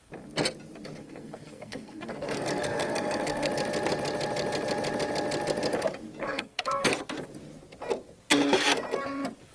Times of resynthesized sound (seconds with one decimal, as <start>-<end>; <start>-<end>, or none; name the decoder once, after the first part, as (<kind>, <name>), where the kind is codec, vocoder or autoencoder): 1.0-3.5 (codec, SNAC); 6.2-6.9